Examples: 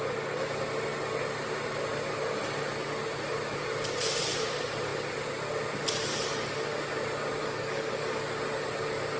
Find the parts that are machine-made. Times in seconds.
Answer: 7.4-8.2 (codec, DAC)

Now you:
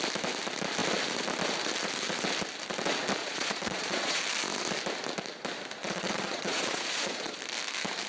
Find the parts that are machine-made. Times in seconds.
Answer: 3.2-4.2 (vocoder, Vocos); 5.8-7.4

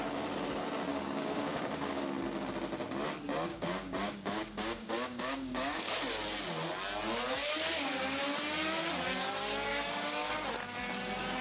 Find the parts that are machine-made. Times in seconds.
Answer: 0.9-2.0 (codec, DAC); 3.5-5.9; 9.7-10.3

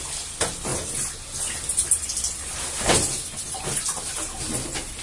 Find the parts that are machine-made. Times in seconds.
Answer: none